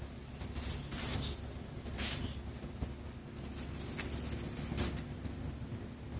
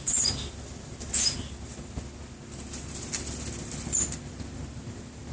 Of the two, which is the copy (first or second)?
second